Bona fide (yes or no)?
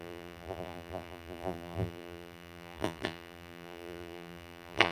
no